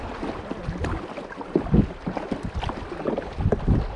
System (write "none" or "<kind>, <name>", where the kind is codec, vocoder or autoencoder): none